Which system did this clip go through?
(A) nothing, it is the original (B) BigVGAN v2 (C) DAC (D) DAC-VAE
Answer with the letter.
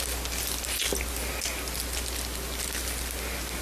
A